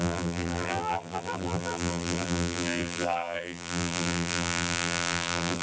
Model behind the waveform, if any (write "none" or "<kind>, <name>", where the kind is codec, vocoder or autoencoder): vocoder, BigVGAN v2